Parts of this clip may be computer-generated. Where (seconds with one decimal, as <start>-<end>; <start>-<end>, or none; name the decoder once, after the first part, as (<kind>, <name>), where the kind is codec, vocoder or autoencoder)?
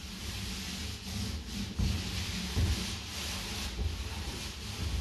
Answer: none